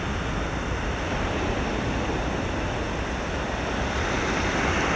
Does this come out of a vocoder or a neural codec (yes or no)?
no